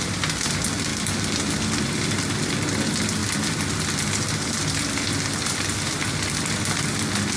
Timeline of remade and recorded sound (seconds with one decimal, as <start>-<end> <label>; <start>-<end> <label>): 0.0-7.4 recorded